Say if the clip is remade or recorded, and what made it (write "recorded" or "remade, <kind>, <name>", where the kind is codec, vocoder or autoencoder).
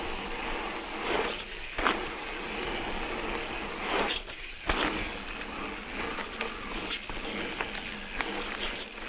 recorded